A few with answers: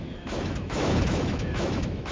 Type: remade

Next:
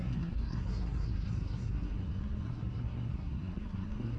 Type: remade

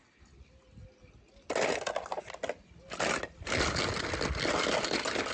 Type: recorded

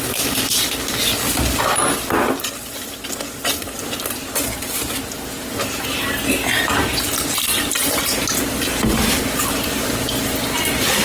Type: recorded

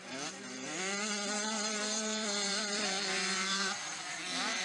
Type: remade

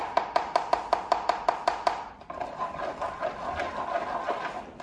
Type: recorded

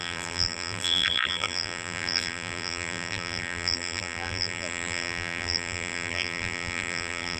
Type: remade